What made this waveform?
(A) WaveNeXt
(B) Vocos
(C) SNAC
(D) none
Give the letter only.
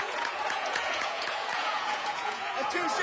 B